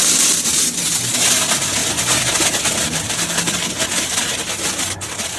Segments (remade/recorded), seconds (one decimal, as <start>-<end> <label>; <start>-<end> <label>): 0.0-1.8 recorded; 1.8-3.7 remade; 3.7-5.4 recorded